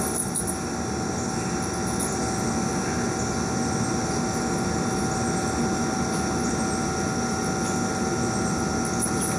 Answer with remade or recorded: recorded